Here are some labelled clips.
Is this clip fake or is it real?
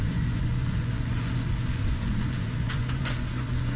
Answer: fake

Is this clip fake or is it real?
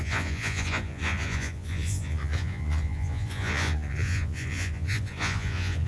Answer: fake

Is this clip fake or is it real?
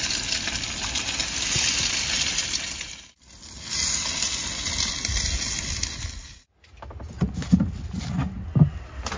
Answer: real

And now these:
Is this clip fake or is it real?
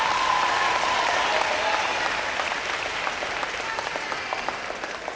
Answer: real